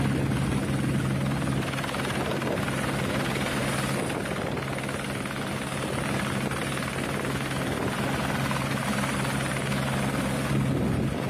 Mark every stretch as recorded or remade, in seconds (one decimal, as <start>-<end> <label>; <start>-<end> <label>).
0.0-11.3 recorded